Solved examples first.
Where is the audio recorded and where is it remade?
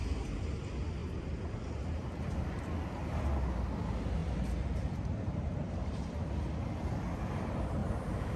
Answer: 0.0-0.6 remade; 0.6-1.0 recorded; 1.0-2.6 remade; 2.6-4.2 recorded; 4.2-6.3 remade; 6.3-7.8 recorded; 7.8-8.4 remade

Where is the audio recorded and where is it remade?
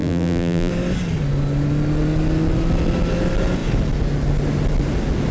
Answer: 0.0-0.7 remade; 0.7-5.3 recorded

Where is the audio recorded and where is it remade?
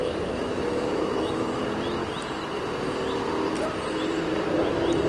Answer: 0.0-1.6 remade; 1.6-5.1 recorded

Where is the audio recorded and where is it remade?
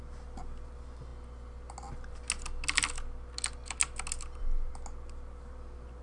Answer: 0.0-6.0 recorded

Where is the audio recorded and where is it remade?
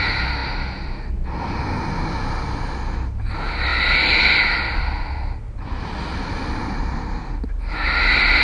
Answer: 0.0-8.4 recorded